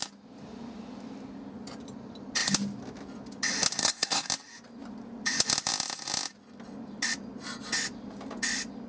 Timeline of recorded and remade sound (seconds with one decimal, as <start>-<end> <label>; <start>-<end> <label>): 0.0-3.8 recorded; 3.8-4.3 remade; 4.3-8.9 recorded